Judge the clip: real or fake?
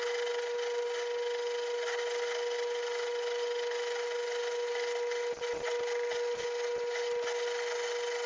real